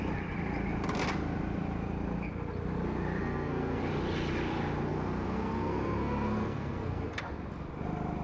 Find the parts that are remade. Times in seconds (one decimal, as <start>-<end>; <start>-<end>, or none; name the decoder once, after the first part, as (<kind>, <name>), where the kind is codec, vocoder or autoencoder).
3.2-3.8 (codec, SNAC); 4.9-7.2